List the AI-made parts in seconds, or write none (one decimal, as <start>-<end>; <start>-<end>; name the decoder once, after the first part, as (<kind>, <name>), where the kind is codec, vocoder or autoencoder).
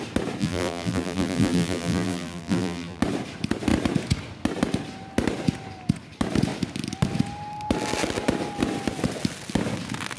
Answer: 0.4-3.0 (vocoder, BigVGAN v2)